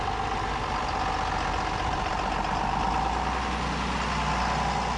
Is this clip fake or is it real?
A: real